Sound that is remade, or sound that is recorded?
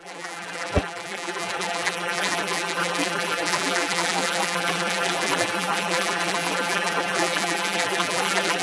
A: remade